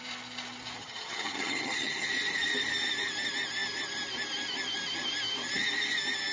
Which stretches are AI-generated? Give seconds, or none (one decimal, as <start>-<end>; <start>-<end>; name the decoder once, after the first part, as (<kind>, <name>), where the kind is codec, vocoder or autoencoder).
0.8-2.1 (vocoder, HiFi-GAN)